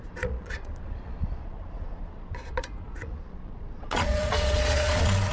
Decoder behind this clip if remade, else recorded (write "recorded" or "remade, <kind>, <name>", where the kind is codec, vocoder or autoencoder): remade, vocoder, Vocos